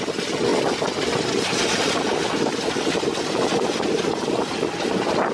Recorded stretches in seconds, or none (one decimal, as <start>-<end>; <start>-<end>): 0.0-2.2